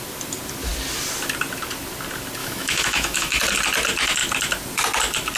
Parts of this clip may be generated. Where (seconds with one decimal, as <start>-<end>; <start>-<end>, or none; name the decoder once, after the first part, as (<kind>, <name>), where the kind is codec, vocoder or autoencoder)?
2.4-3.4 (autoencoder, DAC-VAE)